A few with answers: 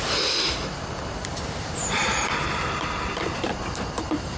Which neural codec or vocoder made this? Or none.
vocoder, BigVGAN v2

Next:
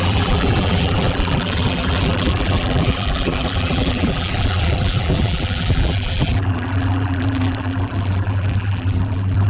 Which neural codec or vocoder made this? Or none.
vocoder, BigVGAN v2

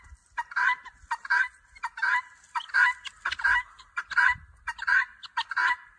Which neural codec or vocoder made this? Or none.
none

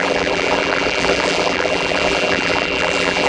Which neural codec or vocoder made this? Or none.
vocoder, BigVGAN v2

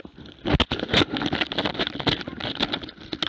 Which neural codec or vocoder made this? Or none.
none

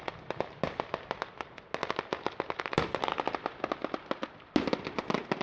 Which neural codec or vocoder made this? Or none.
none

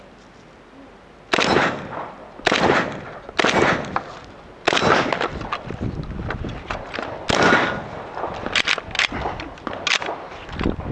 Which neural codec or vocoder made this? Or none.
none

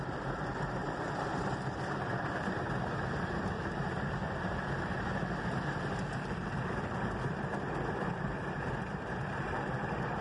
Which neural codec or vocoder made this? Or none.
vocoder, BigVGAN v2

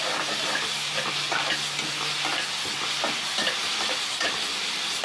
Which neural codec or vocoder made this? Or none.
none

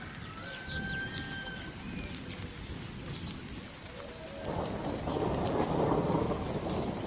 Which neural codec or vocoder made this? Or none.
none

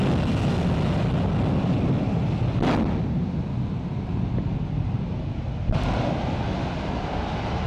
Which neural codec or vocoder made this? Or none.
none